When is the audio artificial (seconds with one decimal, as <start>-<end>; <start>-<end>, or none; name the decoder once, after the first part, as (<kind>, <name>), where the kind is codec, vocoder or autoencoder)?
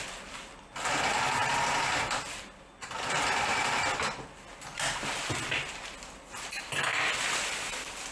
none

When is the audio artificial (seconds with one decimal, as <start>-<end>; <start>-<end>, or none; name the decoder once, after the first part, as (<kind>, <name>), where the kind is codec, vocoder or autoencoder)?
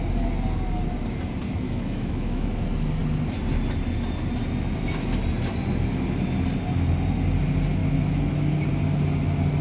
1.4-2.5 (autoencoder, DAC-VAE); 7.8-8.7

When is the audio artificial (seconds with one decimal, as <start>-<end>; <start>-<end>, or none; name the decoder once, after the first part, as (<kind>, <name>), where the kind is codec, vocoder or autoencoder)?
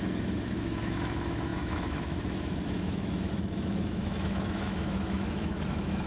0.0-6.1 (autoencoder, DAC-VAE)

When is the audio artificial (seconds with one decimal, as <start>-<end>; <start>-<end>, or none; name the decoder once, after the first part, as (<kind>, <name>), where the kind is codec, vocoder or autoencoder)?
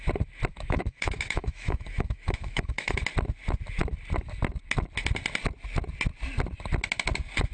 0.5-3.0 (autoencoder, DAC-VAE)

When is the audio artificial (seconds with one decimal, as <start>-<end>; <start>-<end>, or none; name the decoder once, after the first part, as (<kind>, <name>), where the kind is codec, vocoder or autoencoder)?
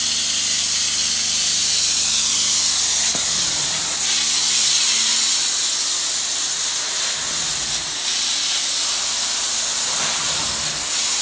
none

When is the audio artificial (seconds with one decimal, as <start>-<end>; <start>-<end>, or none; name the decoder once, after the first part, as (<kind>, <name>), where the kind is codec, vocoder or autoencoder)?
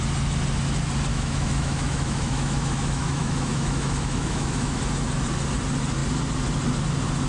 1.1-4.8 (autoencoder, DAC-VAE)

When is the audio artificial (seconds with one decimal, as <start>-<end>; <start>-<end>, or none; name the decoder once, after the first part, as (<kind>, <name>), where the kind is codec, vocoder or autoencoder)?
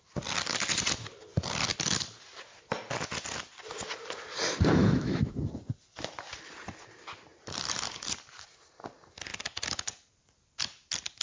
4.8-5.5 (autoencoder, DAC-VAE)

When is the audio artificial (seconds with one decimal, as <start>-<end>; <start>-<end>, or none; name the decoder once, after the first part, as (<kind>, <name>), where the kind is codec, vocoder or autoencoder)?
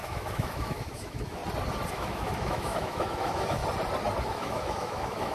0.0-1.4 (autoencoder, DAC-VAE); 1.9-3.6; 4.2-5.3